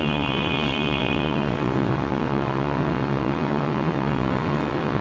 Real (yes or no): no